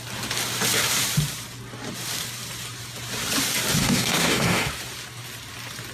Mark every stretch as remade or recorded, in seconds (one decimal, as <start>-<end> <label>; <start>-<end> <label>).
0.0-3.8 recorded; 3.8-4.7 remade; 4.7-5.9 recorded